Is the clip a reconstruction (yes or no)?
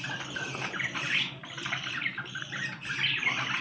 no